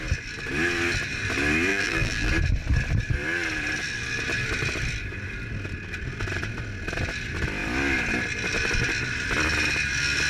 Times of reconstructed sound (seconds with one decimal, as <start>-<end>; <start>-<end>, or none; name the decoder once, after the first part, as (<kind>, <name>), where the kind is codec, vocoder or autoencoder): 1.7-2.3 (vocoder, BigVGAN v2)